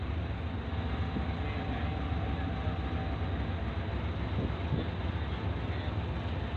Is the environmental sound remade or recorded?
recorded